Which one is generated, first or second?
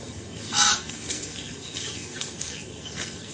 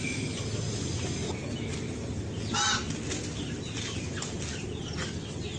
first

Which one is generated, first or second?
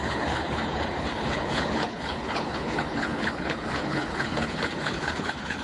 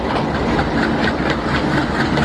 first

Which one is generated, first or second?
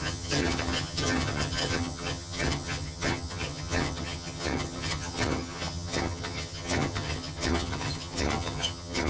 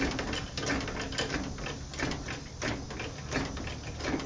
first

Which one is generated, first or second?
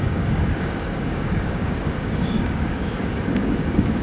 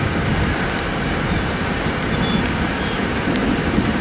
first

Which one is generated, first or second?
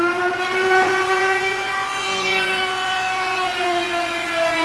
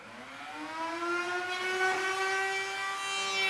first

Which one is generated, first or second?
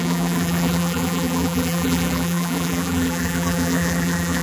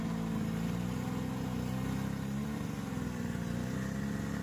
first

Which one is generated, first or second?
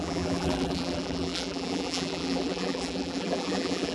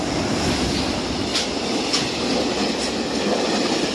first